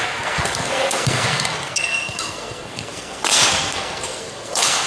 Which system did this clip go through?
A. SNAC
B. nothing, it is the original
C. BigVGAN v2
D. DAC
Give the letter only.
A